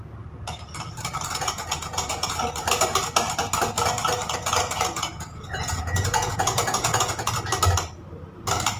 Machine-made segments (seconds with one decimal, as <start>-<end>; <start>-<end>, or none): 1.3-2.4; 4.6-7.3